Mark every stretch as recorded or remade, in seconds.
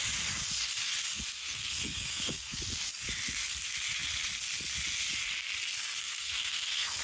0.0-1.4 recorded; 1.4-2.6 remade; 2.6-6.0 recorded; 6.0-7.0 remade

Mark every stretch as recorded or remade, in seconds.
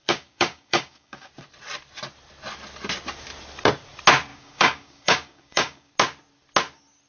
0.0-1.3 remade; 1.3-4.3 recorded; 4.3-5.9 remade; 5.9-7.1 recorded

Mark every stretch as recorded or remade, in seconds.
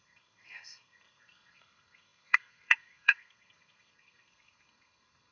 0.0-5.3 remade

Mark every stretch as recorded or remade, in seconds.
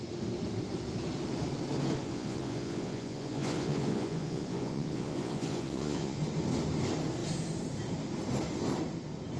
0.0-2.0 recorded; 2.0-6.2 remade; 6.2-9.4 recorded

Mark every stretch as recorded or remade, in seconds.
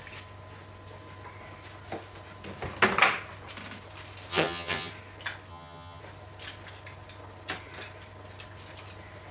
0.0-4.3 recorded; 4.3-4.9 remade; 4.9-5.5 recorded; 5.5-6.0 remade; 6.0-9.3 recorded